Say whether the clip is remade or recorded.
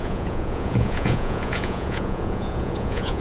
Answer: remade